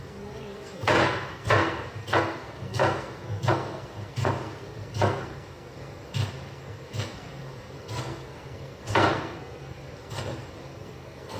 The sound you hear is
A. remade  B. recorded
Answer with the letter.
A